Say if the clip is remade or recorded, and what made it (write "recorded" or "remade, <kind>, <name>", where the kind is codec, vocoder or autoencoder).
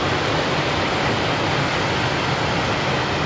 recorded